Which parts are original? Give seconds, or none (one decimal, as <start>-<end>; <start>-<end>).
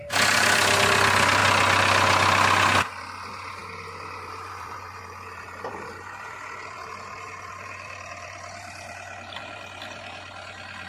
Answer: 0.0-10.9